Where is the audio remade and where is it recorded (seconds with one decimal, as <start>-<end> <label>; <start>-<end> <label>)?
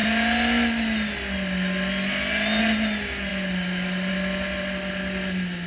0.0-5.7 recorded